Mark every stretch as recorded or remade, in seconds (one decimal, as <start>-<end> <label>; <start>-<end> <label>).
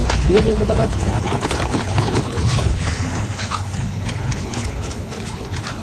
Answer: 0.0-5.8 remade